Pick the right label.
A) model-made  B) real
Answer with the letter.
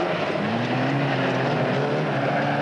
B